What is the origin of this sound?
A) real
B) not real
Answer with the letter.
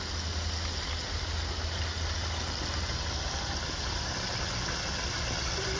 A